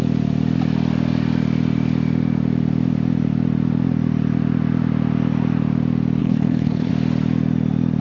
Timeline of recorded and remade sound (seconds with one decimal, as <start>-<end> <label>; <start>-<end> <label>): 0.0-6.2 recorded; 6.2-6.9 remade; 6.9-8.0 recorded